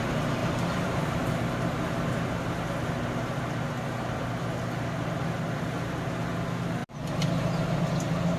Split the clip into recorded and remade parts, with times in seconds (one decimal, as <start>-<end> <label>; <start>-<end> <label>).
0.0-0.4 recorded; 0.4-1.4 remade; 1.4-8.4 recorded